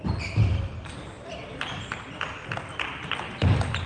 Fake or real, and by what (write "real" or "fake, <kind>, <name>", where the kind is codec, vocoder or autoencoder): real